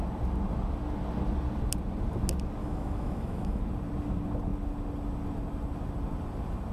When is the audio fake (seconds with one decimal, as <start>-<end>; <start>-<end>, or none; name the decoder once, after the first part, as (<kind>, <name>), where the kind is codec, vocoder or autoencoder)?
2.6-3.6 (autoencoder, DAC-VAE)